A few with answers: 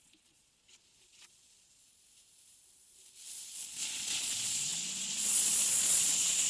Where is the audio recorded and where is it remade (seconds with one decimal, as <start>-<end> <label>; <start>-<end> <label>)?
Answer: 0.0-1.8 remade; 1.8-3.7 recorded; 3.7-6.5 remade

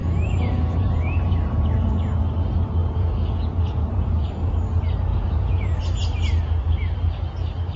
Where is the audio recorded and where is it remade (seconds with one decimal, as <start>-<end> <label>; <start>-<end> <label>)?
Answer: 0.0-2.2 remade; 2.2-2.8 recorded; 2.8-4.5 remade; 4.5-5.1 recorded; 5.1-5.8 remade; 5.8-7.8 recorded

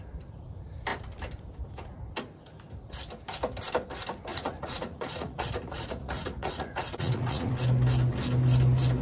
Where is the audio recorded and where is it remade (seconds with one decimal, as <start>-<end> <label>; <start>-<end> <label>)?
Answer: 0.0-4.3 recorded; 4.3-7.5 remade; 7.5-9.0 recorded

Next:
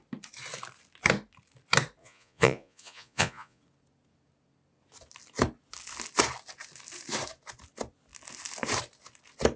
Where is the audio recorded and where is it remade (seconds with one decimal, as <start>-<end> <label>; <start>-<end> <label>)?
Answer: 0.0-2.0 recorded; 2.0-3.6 remade; 3.6-9.6 recorded

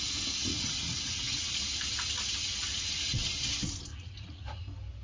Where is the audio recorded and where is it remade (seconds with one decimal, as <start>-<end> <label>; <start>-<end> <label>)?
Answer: 0.0-0.5 recorded; 0.5-1.5 remade; 1.5-3.9 recorded; 3.9-4.6 remade; 4.6-5.0 recorded

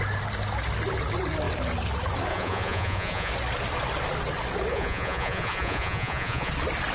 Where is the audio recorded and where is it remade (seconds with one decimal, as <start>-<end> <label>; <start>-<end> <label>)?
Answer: 0.0-2.3 recorded; 2.3-3.3 remade; 3.3-4.7 recorded; 4.7-6.5 remade; 6.5-6.9 recorded

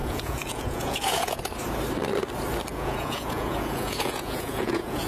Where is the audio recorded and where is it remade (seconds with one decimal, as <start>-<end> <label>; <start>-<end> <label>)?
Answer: 0.0-1.4 remade; 1.4-2.7 recorded; 2.7-5.1 remade